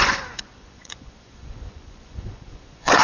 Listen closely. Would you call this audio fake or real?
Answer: fake